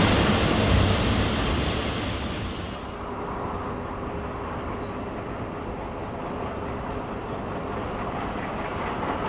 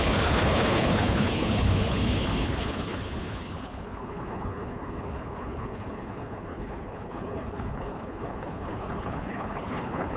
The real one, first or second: first